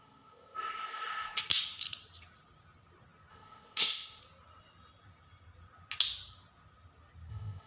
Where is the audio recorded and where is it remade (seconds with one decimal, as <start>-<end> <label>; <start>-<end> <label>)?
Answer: 0.0-1.4 remade; 1.4-3.3 recorded; 3.3-4.2 remade; 4.2-7.3 recorded; 7.3-7.7 remade